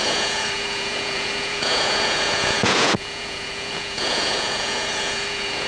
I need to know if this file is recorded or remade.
remade